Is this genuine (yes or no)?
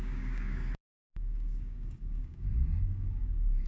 no